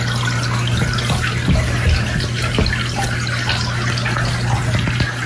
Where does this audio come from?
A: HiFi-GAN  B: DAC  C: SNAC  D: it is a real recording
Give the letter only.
D